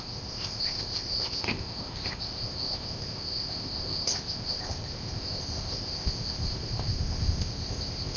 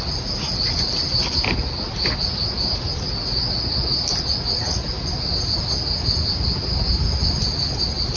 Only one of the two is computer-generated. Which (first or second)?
first